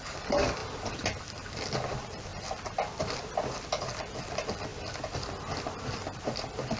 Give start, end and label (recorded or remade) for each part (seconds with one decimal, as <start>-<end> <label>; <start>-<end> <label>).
0.0-4.7 remade; 4.7-5.7 recorded; 5.7-6.8 remade